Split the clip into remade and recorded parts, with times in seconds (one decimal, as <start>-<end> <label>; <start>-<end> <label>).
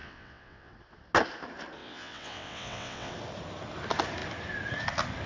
0.0-0.7 remade; 0.7-1.8 recorded; 1.8-3.1 remade; 3.1-5.3 recorded